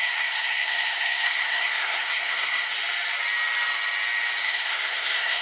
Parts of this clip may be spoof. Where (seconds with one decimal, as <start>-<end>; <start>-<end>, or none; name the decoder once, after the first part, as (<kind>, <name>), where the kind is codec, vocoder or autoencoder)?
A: 0.0-2.7 (codec, SNAC); 4.4-5.4